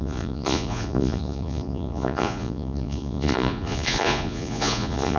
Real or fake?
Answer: fake